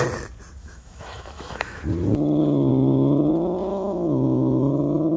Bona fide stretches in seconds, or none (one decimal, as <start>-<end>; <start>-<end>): 0.0-0.6; 1.8-3.7; 4.7-5.2